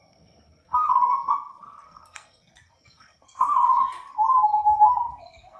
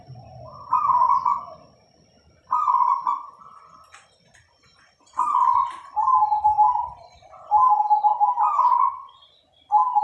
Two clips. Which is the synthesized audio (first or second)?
first